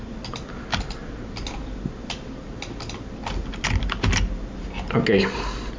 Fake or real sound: real